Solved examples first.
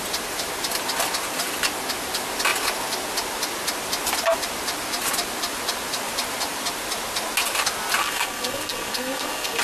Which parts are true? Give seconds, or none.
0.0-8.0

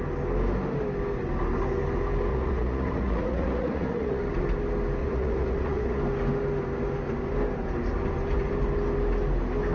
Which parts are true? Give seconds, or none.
0.0-2.3; 4.2-5.0; 6.0-9.7

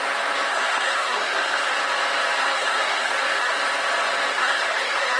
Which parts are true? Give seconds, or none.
0.0-0.5; 1.7-2.4; 3.5-4.3

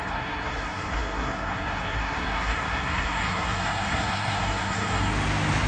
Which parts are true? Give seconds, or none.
5.1-5.7

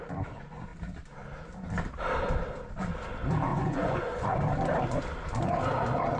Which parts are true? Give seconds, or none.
0.0-3.5; 4.4-6.2

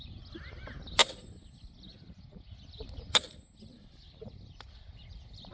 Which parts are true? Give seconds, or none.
0.0-5.5

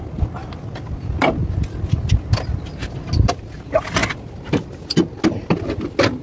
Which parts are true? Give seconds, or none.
0.0-6.2

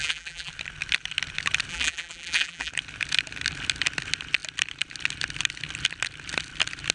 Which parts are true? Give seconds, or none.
0.5-1.7; 2.7-6.9